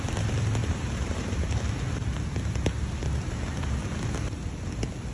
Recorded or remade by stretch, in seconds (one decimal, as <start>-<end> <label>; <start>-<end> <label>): 0.0-0.6 recorded; 0.6-1.7 remade; 1.7-3.0 recorded; 3.0-3.9 remade; 3.9-5.1 recorded